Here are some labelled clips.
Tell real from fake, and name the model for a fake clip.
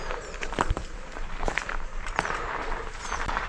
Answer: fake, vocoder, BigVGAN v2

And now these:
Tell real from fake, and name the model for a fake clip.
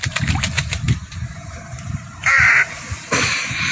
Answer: fake, vocoder, BigVGAN v2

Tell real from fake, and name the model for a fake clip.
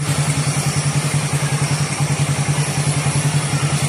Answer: real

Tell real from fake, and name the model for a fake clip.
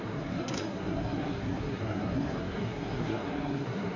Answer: fake, codec, SNAC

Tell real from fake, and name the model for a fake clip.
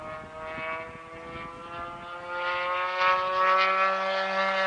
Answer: real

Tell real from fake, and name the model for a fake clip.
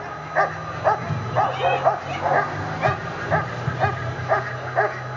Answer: real